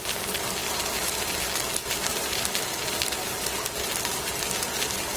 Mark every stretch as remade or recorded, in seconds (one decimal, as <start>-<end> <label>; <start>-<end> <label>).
0.0-0.6 recorded; 0.6-1.1 remade; 1.1-5.2 recorded